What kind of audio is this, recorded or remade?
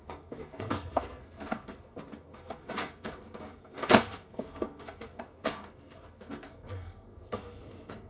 remade